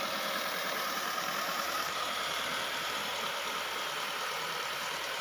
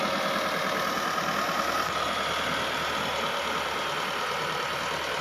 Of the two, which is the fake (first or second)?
first